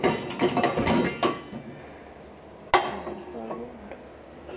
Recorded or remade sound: recorded